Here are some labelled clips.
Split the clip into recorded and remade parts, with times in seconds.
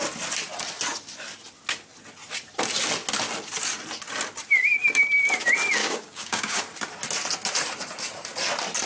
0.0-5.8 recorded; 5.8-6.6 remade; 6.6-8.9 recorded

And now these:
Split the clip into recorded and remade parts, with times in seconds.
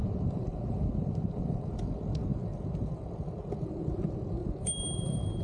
0.0-1.7 remade; 1.7-4.4 recorded; 4.4-5.4 remade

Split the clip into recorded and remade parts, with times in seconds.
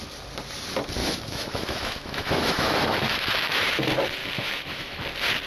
0.0-1.0 recorded; 1.0-3.7 remade; 3.7-4.2 recorded; 4.2-5.0 remade; 5.0-5.5 recorded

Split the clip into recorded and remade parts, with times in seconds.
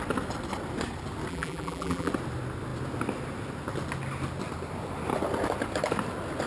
0.0-1.3 recorded; 1.3-2.1 remade; 2.1-6.5 recorded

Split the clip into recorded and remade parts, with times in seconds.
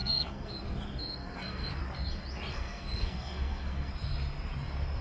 0.0-0.5 remade; 0.5-1.2 recorded; 1.2-1.8 remade; 1.8-2.5 recorded; 2.5-3.9 remade; 3.9-5.0 recorded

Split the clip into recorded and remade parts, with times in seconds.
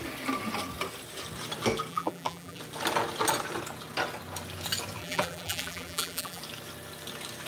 0.0-1.9 recorded; 1.9-2.6 remade; 2.6-5.0 recorded; 5.0-6.4 remade; 6.4-7.5 recorded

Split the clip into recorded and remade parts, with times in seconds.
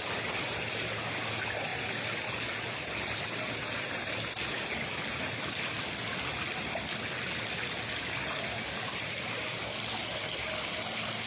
0.0-11.3 recorded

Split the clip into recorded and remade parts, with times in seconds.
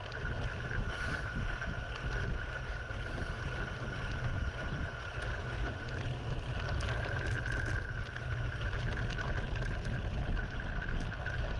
0.0-4.3 recorded; 4.3-5.9 remade; 5.9-11.6 recorded